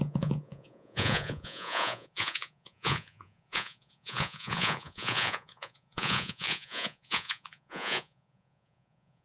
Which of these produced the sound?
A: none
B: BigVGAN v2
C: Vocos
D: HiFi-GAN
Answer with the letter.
C